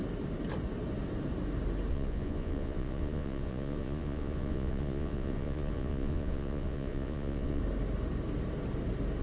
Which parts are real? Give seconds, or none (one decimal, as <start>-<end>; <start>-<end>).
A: 0.0-1.9; 7.6-9.2